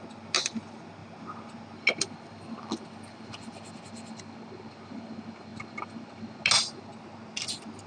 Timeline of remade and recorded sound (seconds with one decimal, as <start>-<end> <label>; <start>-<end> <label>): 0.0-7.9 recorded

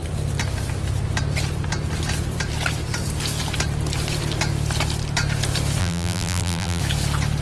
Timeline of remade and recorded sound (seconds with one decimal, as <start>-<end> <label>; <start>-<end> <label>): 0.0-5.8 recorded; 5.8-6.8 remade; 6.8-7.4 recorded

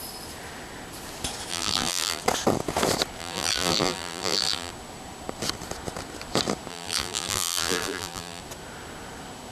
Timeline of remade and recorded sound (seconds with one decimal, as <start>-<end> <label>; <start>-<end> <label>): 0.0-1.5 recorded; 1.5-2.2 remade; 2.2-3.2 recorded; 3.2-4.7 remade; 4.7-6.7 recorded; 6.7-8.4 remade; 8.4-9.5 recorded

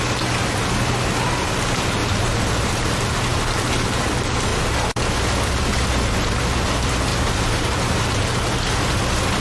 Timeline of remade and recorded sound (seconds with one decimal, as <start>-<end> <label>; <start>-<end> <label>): 0.0-2.0 recorded; 2.0-2.9 remade; 2.9-3.3 recorded; 3.3-4.1 remade; 4.1-4.5 recorded; 4.5-5.0 remade; 5.0-7.1 recorded; 7.1-8.0 remade; 8.0-9.4 recorded

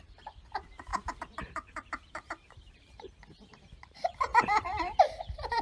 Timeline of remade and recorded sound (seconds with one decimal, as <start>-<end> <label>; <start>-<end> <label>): 0.0-5.6 remade

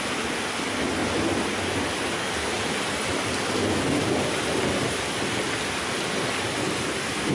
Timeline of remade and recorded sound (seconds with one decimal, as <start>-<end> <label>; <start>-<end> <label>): 0.0-7.3 recorded

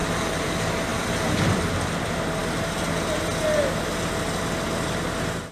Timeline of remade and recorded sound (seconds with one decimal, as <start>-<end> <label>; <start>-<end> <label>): 0.0-0.5 remade; 0.5-0.9 recorded; 0.9-1.6 remade; 1.6-5.5 recorded

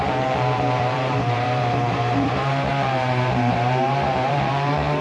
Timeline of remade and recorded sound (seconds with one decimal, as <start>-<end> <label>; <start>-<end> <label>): 0.0-5.0 remade